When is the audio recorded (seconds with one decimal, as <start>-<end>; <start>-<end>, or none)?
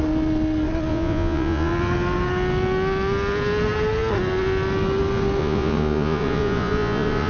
0.0-0.9; 1.7-5.4